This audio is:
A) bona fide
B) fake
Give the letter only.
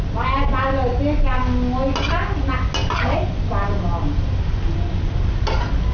A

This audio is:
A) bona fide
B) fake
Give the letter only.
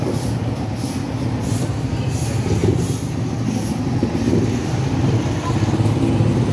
A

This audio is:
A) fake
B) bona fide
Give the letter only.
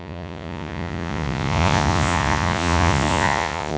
A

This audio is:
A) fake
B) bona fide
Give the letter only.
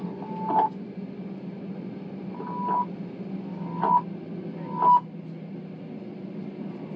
B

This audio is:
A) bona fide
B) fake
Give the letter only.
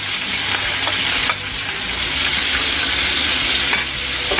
A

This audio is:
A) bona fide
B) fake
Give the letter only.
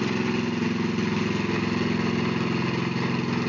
A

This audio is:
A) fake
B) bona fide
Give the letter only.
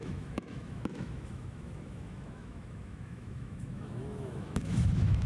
A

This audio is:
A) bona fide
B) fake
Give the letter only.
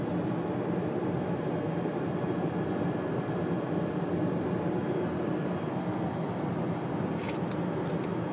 A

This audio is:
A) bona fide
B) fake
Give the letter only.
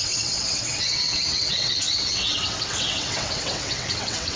B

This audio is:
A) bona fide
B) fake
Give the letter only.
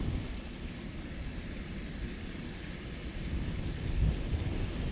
A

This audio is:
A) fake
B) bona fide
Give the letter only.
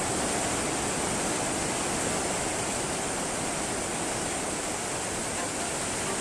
B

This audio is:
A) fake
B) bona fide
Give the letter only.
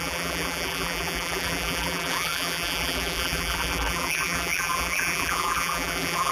A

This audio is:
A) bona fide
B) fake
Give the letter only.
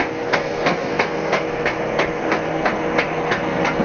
B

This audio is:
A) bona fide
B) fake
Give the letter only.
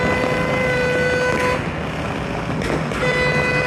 A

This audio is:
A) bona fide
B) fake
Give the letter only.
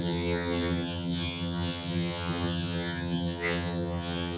B